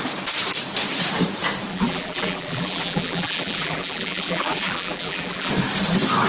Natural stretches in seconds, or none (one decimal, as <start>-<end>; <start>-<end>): 0.0-1.7; 5.5-6.3